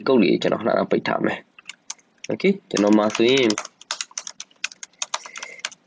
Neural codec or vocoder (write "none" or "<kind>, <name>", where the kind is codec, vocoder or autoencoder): none